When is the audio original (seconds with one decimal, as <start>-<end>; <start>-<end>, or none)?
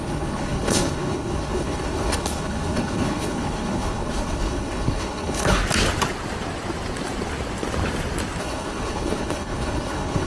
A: 5.6-8.4